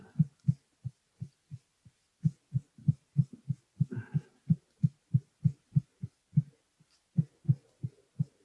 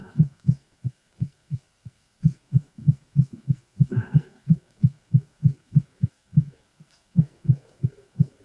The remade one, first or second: second